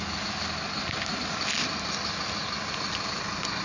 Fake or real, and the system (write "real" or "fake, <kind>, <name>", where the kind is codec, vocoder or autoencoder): real